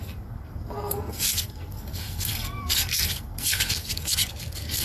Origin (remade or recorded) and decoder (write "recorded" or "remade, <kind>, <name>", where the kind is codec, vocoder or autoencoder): remade, codec, SNAC